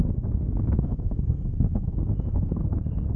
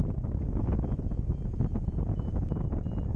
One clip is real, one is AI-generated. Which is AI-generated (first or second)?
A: first